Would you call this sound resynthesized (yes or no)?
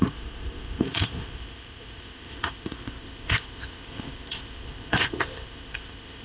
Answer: yes